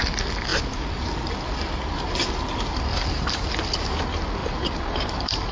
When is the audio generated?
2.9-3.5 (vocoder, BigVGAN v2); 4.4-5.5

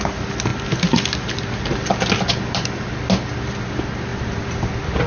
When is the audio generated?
none

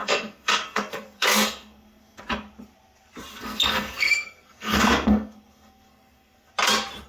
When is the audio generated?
0.0-2.2 (codec, SNAC); 3.3-6.5